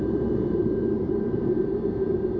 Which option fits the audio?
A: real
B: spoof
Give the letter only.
B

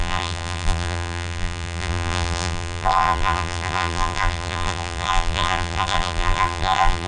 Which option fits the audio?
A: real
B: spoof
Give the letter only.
B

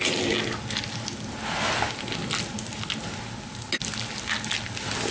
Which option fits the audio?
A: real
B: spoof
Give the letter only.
A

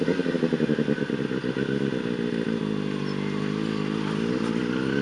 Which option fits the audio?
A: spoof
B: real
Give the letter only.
B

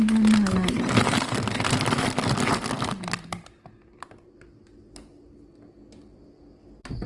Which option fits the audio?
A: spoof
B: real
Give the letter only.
B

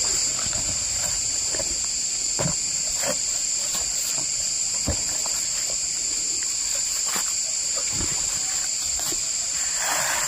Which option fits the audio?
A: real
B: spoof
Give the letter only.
B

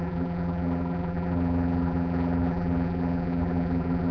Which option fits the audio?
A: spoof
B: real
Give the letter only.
A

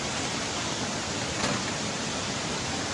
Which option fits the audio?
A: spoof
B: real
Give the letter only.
B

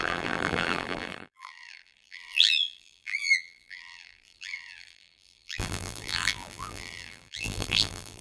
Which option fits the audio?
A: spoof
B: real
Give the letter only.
A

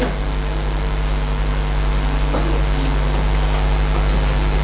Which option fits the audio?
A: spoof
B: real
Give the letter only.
B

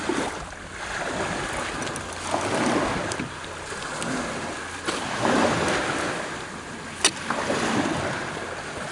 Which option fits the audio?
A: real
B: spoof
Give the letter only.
A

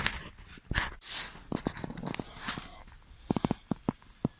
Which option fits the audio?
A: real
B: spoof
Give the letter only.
A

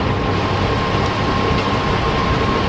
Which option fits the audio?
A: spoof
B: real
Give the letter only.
B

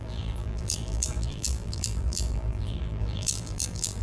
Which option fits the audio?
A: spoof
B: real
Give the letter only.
A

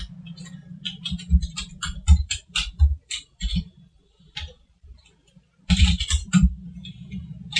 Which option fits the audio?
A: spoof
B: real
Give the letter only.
A